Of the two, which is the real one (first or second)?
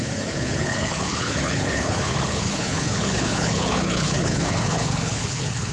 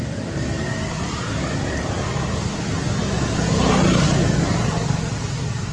second